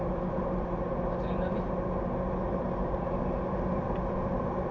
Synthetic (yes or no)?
no